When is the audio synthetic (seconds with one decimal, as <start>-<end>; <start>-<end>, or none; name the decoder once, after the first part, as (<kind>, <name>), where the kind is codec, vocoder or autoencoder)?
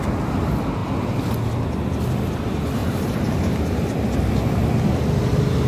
2.8-3.4 (vocoder, BigVGAN v2)